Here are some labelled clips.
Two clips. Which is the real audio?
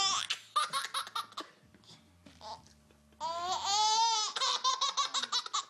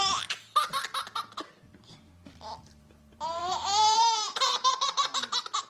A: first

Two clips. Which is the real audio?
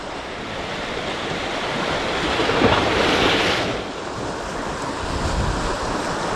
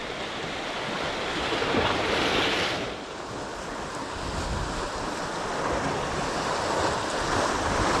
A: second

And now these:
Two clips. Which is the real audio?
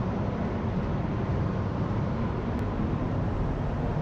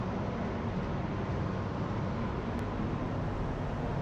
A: second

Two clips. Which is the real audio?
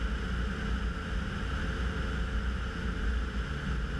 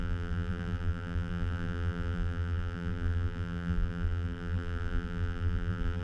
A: first